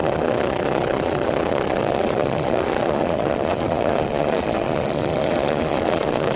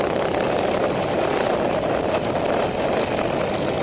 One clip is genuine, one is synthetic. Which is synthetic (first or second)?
first